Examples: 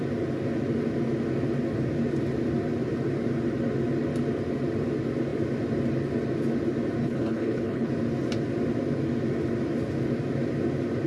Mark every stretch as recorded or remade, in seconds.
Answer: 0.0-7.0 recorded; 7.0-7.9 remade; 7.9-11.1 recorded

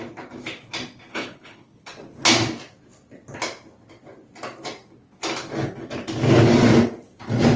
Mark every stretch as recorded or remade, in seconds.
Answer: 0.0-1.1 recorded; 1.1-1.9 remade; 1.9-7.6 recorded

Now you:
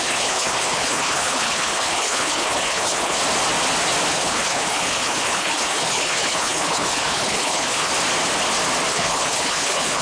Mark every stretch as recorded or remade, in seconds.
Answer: 0.0-3.2 remade; 3.2-4.1 recorded; 4.1-7.9 remade; 7.9-8.9 recorded; 8.9-10.0 remade

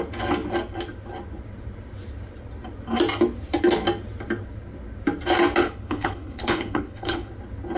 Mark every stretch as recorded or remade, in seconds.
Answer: 0.0-5.6 recorded; 5.6-7.3 remade; 7.3-7.8 recorded

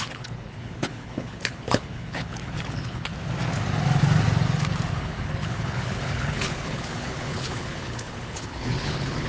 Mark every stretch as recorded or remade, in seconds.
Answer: 0.0-3.1 remade; 3.1-5.0 recorded; 5.0-9.3 remade

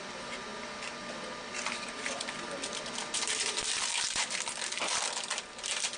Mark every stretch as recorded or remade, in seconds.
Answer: 0.0-6.0 recorded

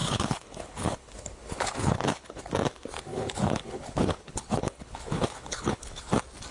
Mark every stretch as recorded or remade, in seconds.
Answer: 0.0-2.4 remade; 2.4-3.1 recorded; 3.1-6.0 remade; 6.0-6.5 recorded